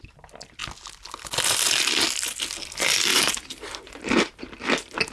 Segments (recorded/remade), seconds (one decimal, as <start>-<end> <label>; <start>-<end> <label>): 0.0-3.1 recorded; 3.1-4.4 remade; 4.4-5.1 recorded